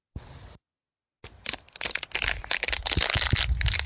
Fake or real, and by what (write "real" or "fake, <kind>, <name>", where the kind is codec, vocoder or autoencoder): real